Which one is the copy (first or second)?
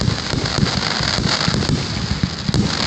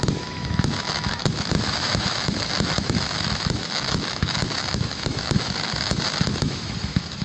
second